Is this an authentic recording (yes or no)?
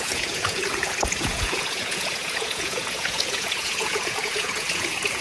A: no